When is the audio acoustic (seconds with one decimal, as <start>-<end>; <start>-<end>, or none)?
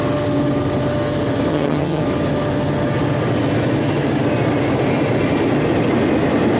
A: 0.0-1.5; 2.0-6.6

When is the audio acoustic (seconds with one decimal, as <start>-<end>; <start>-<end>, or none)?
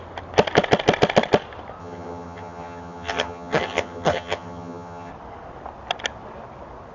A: 0.0-1.8; 5.1-6.9